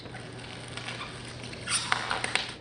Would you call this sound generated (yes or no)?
no